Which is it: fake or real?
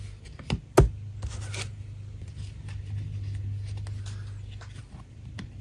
real